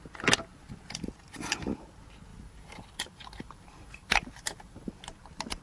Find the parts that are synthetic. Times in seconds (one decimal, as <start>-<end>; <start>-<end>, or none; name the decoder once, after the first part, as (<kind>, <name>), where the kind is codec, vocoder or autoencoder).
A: 2.3-4.9 (vocoder, BigVGAN v2)